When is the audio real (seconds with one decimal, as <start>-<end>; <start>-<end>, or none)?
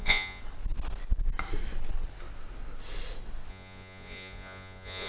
0.4-3.5